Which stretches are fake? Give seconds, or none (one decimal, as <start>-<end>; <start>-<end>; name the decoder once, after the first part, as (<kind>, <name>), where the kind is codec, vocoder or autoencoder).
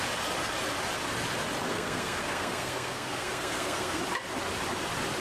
1.7-4.0 (codec, SNAC)